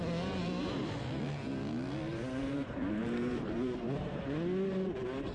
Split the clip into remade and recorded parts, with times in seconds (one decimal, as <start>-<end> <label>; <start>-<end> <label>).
0.0-0.4 recorded; 0.4-1.2 remade; 1.2-2.1 recorded; 2.1-4.2 remade; 4.2-5.3 recorded